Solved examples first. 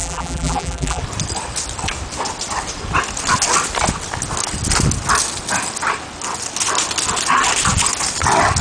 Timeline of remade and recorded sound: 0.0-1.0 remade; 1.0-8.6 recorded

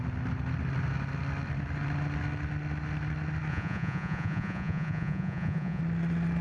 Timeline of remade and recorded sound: 0.0-3.5 recorded; 3.5-5.8 remade; 5.8-6.4 recorded

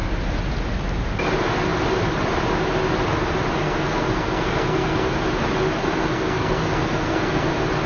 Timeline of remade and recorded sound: 0.0-3.6 recorded; 3.6-5.1 remade; 5.1-5.8 recorded; 5.8-7.5 remade; 7.5-7.9 recorded